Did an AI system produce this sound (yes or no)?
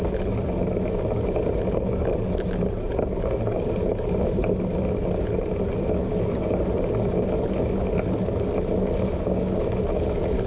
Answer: no